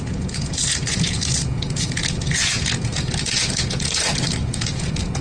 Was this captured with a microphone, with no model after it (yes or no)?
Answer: no